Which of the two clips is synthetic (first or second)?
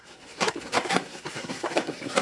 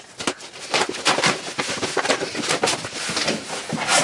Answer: first